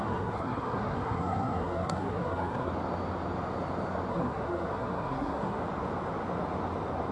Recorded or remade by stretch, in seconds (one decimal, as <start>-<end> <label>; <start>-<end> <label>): 0.0-2.7 remade; 2.7-4.1 recorded; 4.1-5.6 remade; 5.6-7.1 recorded